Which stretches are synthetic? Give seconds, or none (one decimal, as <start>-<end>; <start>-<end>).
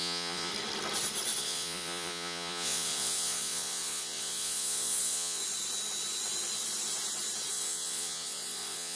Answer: 0.0-0.5; 1.4-5.4; 7.5-9.0